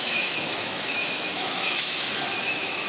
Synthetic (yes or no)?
yes